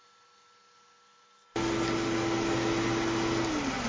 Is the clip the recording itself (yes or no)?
yes